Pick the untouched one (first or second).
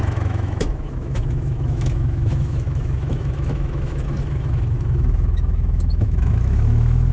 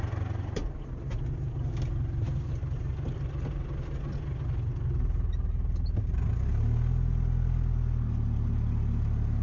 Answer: second